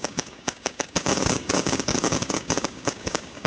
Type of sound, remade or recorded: remade